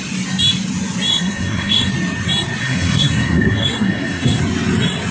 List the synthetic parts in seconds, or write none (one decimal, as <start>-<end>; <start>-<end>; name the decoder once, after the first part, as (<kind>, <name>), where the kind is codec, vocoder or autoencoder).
1.1-1.9 (codec, SNAC); 2.6-4.4